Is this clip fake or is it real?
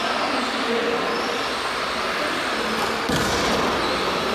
real